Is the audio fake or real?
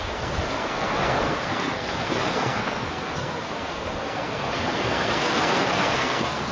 fake